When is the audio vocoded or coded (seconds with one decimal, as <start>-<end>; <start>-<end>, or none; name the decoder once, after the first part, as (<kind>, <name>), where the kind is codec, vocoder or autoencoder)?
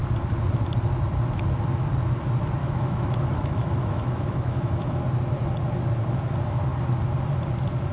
2.6-5.0 (autoencoder, DAC-VAE)